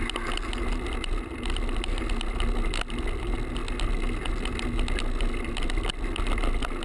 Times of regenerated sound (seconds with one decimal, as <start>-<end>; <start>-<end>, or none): none